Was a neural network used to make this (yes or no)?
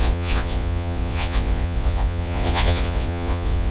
yes